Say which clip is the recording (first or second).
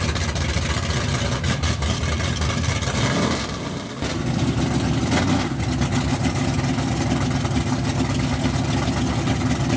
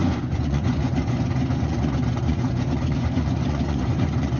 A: first